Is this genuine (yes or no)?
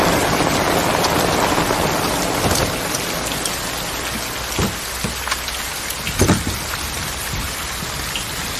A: yes